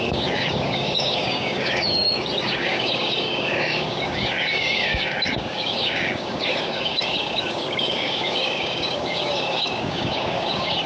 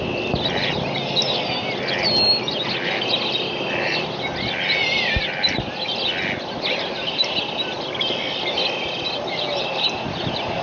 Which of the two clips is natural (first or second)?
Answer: second